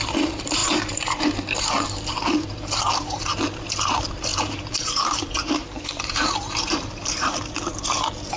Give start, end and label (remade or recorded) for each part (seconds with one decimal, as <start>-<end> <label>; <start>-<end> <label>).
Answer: 0.0-8.4 remade